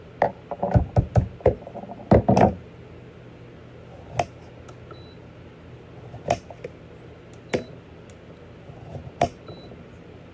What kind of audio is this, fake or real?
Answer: real